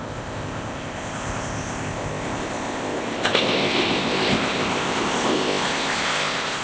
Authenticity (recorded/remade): remade